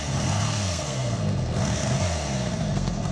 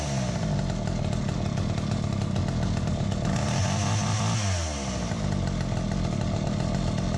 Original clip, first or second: second